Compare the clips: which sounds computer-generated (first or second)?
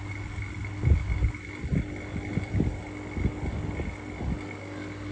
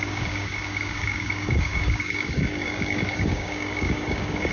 second